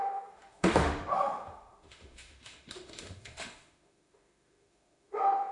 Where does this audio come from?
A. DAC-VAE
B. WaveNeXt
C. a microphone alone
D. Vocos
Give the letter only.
A